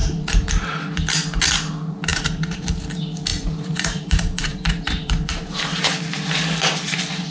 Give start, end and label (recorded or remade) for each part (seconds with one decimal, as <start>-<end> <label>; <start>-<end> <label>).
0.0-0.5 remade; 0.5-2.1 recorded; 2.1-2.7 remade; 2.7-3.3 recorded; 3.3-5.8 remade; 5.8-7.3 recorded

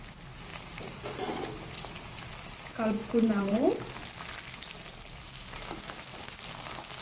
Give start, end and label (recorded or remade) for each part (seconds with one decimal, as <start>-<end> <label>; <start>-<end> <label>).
0.0-0.5 recorded; 0.5-1.1 remade; 1.1-3.0 recorded; 3.0-4.0 remade; 4.0-7.0 recorded

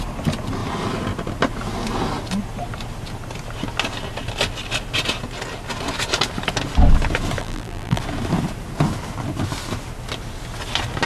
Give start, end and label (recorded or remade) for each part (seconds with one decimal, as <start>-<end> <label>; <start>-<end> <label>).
0.0-7.4 recorded; 7.4-8.0 remade; 8.0-11.1 recorded

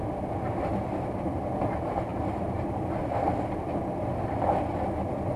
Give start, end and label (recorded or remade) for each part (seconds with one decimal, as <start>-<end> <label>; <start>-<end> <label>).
0.0-0.7 recorded; 0.7-1.3 remade; 1.3-2.1 recorded; 2.1-5.4 remade

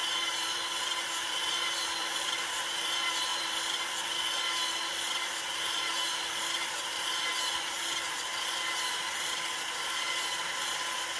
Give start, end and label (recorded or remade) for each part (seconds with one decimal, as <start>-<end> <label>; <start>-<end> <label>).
0.0-7.3 remade; 7.3-8.1 recorded; 8.1-11.2 remade

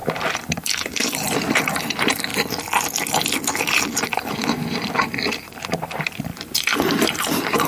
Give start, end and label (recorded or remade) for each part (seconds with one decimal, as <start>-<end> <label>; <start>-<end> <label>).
0.0-2.3 remade; 2.3-4.3 recorded; 4.3-7.7 remade

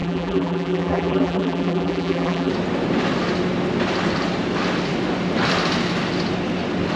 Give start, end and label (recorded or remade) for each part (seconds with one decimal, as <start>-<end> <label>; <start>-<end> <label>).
0.0-2.5 remade; 2.5-7.0 recorded

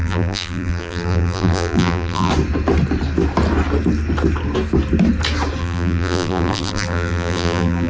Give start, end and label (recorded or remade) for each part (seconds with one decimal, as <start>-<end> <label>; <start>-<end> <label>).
0.0-2.3 remade; 2.3-5.6 recorded; 5.6-7.9 remade